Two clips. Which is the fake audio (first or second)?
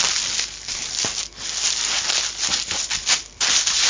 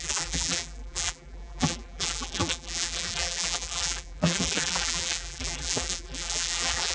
second